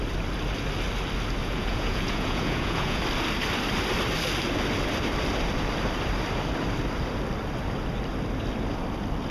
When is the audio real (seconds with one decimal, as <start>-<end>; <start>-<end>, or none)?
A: 0.0-1.4; 3.0-9.3